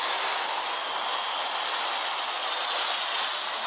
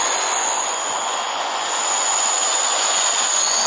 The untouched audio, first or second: first